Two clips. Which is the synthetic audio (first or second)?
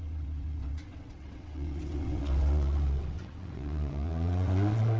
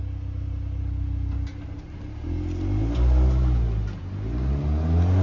first